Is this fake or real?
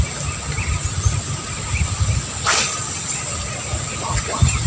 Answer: real